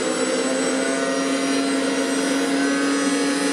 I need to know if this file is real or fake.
real